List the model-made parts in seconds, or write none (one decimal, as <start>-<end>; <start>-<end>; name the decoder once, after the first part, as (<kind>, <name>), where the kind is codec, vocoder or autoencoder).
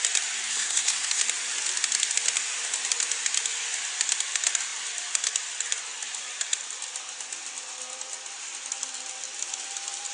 0.5-1.2 (codec, SNAC)